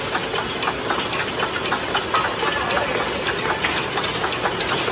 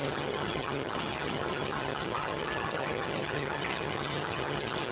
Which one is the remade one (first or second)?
second